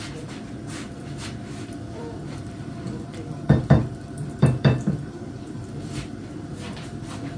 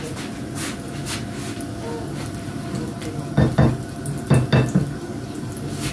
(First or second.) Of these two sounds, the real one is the second